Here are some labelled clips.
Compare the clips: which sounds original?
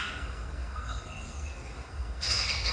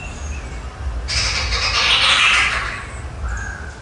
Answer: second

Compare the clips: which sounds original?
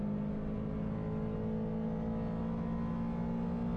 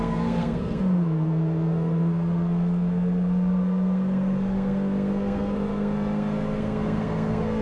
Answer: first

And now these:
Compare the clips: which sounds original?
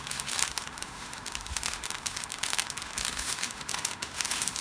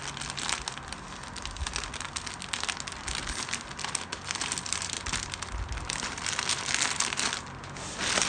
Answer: second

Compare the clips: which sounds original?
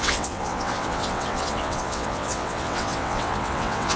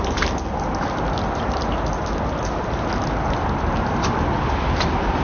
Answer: second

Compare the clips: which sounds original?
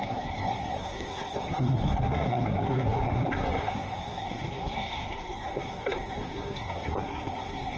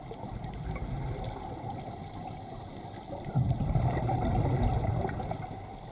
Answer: second